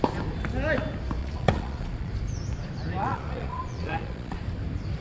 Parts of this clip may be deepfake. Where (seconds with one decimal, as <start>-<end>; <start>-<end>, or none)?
1.2-2.1; 3.0-4.4